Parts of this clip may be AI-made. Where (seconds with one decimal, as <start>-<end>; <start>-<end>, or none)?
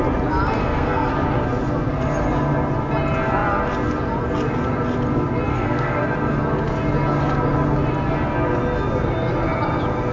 0.6-1.1; 5.5-6.0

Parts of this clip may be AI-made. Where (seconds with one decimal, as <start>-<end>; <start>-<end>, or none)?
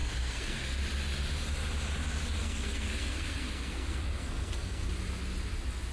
0.0-0.8; 2.4-4.9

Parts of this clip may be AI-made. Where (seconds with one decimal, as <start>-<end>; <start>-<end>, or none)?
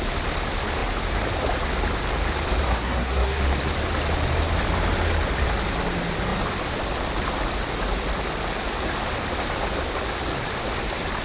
2.7-3.4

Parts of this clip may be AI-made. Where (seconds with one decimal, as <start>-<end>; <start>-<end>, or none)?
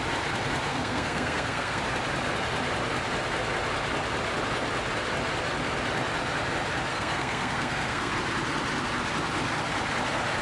0.7-1.8; 6.9-8.1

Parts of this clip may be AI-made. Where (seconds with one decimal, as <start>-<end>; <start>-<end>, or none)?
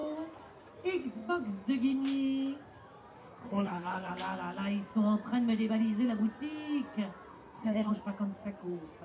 3.2-4.1; 7.3-7.9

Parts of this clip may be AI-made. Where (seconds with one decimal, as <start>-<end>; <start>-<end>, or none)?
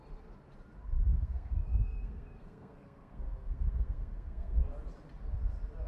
1.1-4.6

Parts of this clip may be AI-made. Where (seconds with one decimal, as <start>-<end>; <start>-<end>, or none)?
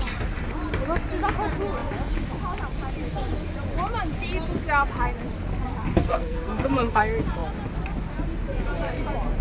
6.0-7.0